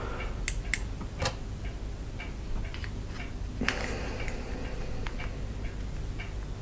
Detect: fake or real real